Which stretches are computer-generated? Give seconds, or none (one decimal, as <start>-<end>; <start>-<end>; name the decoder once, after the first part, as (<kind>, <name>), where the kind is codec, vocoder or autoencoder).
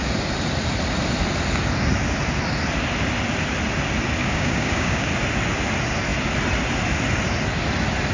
4.2-5.1 (codec, DAC)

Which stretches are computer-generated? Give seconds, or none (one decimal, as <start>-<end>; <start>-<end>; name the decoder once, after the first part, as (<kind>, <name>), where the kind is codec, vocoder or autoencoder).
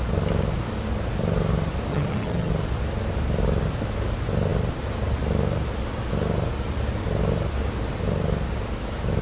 1.9-2.5 (vocoder, HiFi-GAN)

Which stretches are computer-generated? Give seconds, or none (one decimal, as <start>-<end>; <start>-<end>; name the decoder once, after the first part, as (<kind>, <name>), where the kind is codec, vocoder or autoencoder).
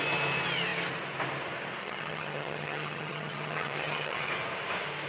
1.8-4.3 (vocoder, HiFi-GAN)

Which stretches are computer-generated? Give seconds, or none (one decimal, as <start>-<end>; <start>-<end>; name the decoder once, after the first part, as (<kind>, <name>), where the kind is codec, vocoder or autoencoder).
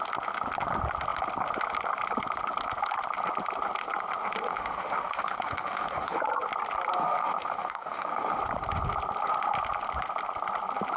4.5-6.2 (autoencoder, DAC-VAE); 7.0-8.4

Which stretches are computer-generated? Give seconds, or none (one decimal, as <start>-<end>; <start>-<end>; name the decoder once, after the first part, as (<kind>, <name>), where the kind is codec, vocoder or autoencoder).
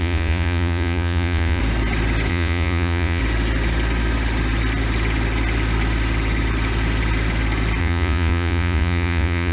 0.0-1.6 (vocoder, Vocos); 2.3-3.2; 7.8-9.5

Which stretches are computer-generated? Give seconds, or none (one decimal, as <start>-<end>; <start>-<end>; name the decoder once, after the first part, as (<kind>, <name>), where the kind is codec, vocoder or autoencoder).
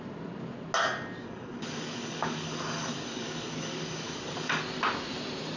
1.2-4.6 (codec, DAC)